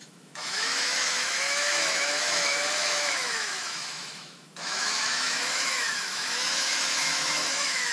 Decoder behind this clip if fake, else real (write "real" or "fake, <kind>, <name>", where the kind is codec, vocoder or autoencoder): fake, autoencoder, DAC-VAE